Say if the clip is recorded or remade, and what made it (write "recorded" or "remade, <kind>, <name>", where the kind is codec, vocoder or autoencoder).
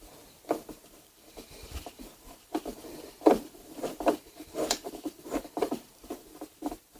remade, vocoder, BigVGAN v2